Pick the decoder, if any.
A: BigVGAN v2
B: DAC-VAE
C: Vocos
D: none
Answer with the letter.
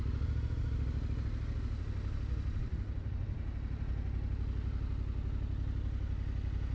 D